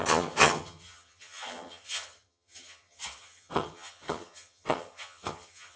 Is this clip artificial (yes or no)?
yes